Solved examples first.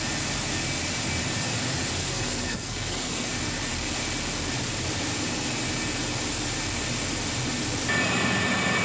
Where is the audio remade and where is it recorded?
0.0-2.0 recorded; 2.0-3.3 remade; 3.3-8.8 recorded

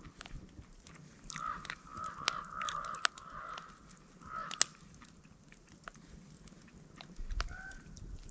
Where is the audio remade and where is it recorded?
0.0-8.3 recorded

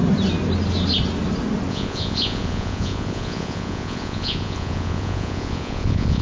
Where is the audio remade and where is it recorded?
0.0-1.7 recorded; 1.7-6.2 remade